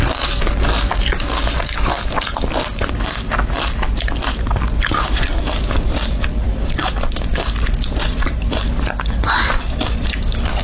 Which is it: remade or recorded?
recorded